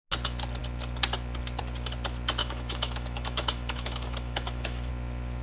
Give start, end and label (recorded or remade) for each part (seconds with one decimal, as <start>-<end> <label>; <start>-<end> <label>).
0.0-2.4 recorded; 2.4-4.9 remade; 4.9-5.4 recorded